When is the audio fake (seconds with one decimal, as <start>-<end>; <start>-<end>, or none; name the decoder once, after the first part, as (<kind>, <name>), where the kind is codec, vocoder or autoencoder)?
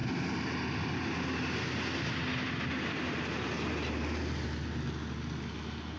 none